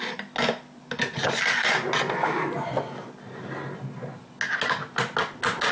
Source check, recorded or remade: recorded